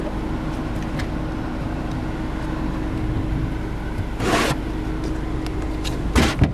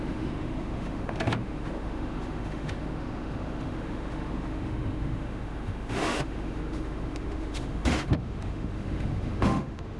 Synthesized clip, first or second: second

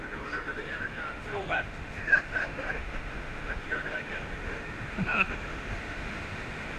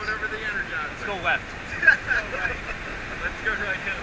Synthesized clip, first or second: first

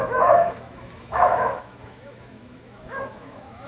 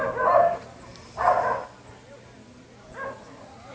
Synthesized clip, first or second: first